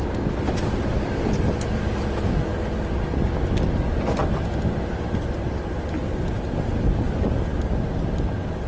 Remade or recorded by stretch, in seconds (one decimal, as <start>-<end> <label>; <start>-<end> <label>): 0.0-8.7 recorded